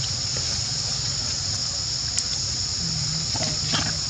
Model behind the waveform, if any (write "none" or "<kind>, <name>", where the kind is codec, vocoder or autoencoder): none